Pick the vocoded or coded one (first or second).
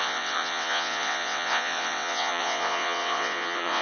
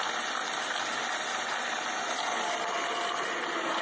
first